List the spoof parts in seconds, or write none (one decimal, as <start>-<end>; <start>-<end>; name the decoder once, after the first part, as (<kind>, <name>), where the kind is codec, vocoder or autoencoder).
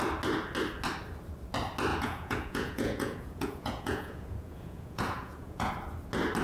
1.9-5.7 (vocoder, Vocos)